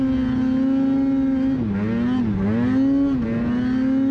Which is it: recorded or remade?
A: recorded